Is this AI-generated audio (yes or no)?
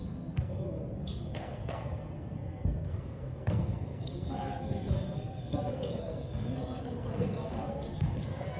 yes